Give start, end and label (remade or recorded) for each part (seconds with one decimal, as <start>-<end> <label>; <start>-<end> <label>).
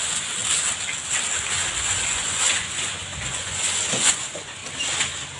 0.0-0.4 remade; 0.4-1.8 recorded; 1.8-4.6 remade; 4.6-5.4 recorded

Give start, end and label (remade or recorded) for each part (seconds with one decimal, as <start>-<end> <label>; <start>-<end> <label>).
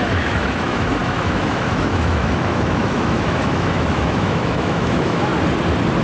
0.0-5.3 remade; 5.3-6.0 recorded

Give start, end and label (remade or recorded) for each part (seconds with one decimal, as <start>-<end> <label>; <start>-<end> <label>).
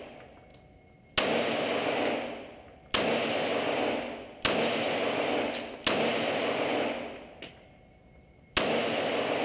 0.0-9.4 recorded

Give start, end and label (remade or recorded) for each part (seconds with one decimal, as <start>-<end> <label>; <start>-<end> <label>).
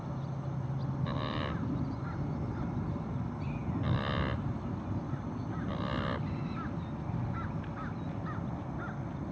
0.0-9.3 recorded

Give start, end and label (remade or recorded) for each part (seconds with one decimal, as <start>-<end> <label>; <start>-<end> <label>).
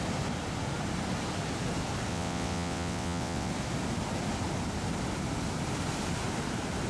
0.0-2.1 recorded; 2.1-3.5 remade; 3.5-6.9 recorded